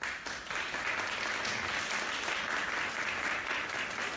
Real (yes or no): yes